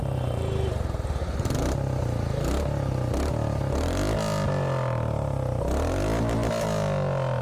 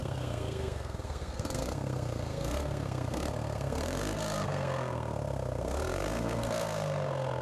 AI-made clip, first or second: second